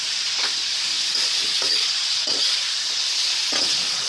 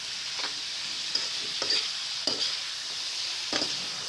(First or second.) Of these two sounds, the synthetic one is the first